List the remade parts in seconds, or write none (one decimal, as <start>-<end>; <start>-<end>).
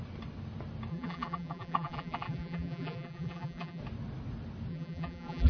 0.9-3.8; 4.7-5.5